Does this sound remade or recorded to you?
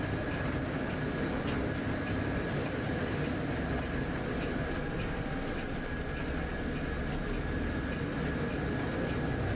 recorded